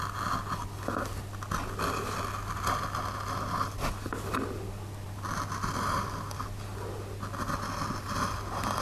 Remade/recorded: recorded